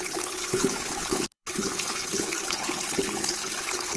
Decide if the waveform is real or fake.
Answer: fake